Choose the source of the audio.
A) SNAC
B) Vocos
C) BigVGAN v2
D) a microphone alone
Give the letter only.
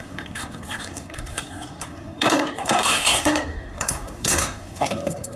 A